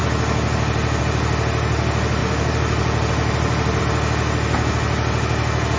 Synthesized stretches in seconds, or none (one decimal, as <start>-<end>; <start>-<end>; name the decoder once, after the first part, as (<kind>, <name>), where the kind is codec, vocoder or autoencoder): 2.2-3.8 (vocoder, BigVGAN v2)